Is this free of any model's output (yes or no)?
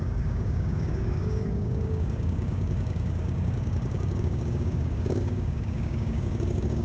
no